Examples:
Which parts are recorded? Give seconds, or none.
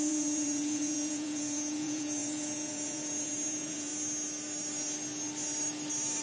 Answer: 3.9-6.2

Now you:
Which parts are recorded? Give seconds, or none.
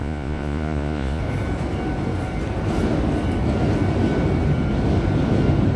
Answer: 1.2-5.8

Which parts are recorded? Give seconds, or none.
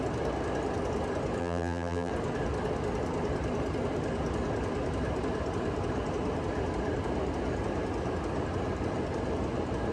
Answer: 0.0-1.4; 2.1-9.9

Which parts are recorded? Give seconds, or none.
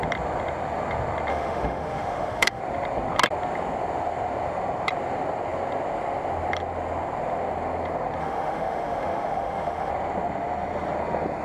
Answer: 0.0-1.3; 2.6-8.2; 9.9-11.4